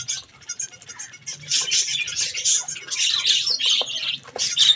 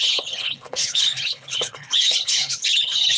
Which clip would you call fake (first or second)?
second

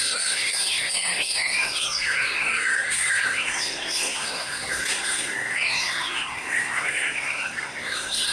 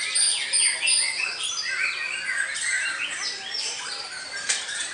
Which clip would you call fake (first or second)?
first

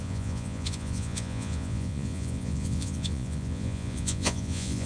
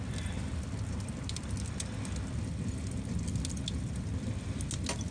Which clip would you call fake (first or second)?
first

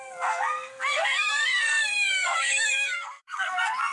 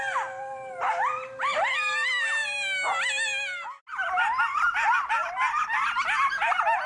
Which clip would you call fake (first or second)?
first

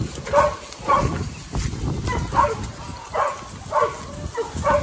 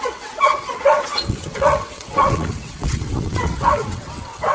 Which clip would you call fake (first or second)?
second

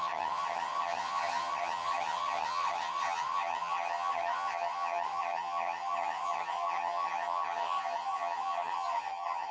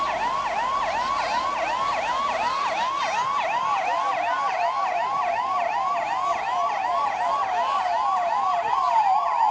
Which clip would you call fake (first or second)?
first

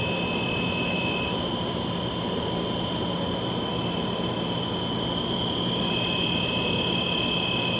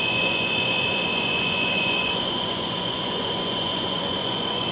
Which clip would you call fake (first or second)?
second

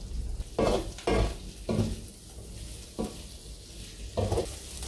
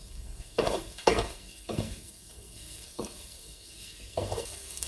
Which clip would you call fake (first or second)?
second